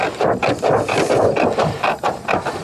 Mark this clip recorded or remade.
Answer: recorded